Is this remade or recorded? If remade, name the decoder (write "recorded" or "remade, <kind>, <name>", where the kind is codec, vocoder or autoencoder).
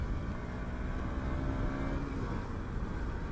recorded